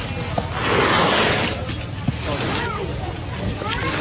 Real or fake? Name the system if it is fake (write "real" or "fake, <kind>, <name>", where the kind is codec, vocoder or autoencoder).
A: real